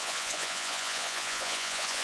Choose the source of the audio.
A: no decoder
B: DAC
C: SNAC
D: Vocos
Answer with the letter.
D